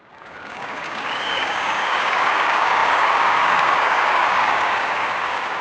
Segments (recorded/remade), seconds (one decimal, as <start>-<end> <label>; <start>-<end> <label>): 0.0-5.6 remade